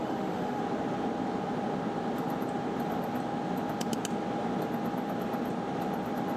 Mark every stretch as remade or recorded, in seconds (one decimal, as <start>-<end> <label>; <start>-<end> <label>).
0.0-0.6 remade; 0.6-6.4 recorded